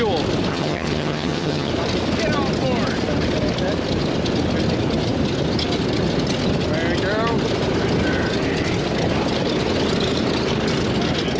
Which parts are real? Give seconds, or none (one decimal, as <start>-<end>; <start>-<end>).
0.0-0.5; 1.7-11.4